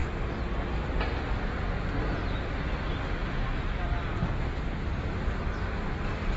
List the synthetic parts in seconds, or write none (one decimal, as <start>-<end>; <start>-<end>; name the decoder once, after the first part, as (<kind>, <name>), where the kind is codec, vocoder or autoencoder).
none